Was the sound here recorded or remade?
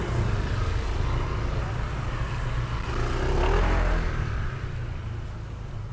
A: recorded